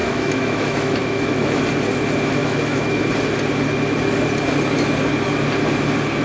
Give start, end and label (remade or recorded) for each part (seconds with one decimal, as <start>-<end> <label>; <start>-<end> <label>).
0.0-1.6 remade; 1.6-2.4 recorded; 2.4-3.0 remade; 3.0-6.2 recorded